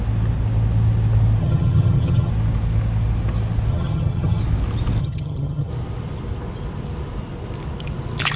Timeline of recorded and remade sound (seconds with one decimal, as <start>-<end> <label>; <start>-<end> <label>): 0.0-1.4 recorded; 1.4-2.3 remade; 2.3-3.7 recorded; 3.7-4.4 remade; 4.4-5.0 recorded; 5.0-5.7 remade; 5.7-8.4 recorded